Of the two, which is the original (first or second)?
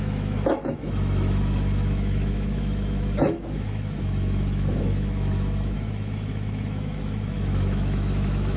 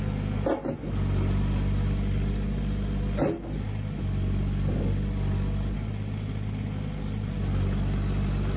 second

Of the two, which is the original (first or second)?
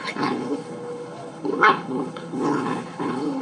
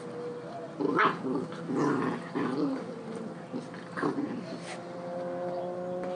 second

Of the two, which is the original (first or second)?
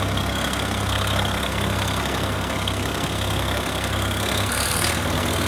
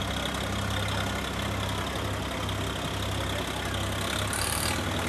second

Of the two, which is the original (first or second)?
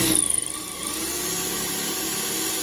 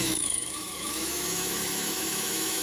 first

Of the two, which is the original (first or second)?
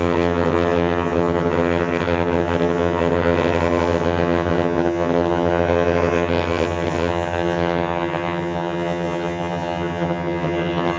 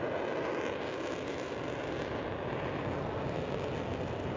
second